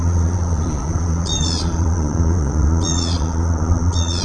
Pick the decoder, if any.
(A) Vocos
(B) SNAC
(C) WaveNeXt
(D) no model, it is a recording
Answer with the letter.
A